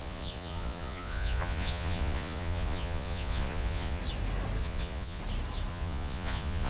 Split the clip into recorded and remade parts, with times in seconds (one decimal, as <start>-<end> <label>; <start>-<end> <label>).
0.0-4.0 remade; 4.0-4.6 recorded; 4.6-5.2 remade; 5.2-5.7 recorded; 5.7-6.7 remade

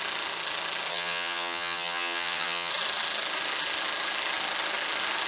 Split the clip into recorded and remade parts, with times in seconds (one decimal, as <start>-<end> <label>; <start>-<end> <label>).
0.0-0.9 recorded; 0.9-2.7 remade; 2.7-5.3 recorded

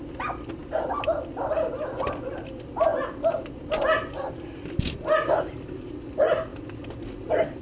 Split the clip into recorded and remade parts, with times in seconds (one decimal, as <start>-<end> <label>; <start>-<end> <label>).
0.0-7.6 recorded

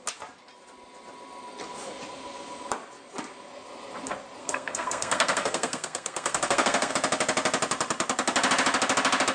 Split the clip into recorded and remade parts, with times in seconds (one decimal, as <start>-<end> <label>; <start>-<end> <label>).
0.0-4.4 recorded; 4.4-6.9 remade; 6.9-9.3 recorded

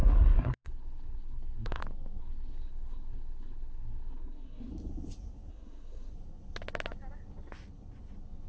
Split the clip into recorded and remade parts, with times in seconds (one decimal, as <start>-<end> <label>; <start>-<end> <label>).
0.0-1.8 remade; 1.8-2.2 recorded; 2.2-4.7 remade; 4.7-5.5 recorded; 5.5-6.1 remade; 6.1-8.5 recorded